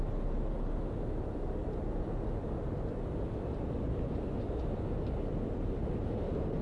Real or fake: real